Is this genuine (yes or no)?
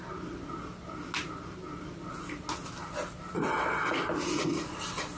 yes